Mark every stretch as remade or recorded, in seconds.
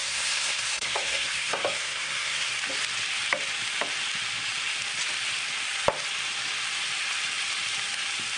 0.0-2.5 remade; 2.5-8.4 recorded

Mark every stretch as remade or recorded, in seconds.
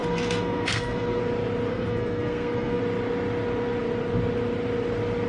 0.0-1.2 remade; 1.2-1.7 recorded; 1.7-2.8 remade; 2.8-5.3 recorded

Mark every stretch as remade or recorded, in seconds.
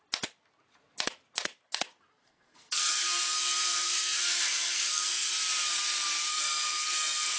0.0-2.2 recorded; 2.2-5.3 remade; 5.3-6.3 recorded; 6.3-7.4 remade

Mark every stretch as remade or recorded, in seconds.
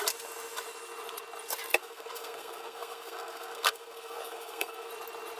0.0-1.8 recorded; 1.8-4.9 remade; 4.9-5.4 recorded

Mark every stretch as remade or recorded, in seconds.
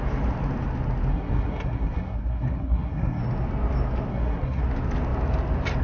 0.0-1.1 recorded; 1.1-3.2 remade; 3.2-4.1 recorded; 4.1-4.6 remade; 4.6-5.8 recorded